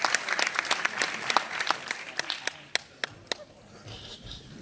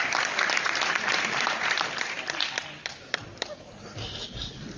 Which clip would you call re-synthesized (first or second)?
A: second